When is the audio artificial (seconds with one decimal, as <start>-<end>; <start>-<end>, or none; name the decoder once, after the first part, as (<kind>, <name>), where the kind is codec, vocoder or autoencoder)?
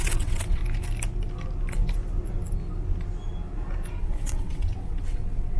0.0-0.6 (vocoder, WaveNeXt); 4.0-5.6